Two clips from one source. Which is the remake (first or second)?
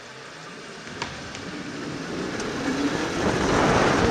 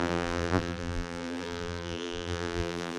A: second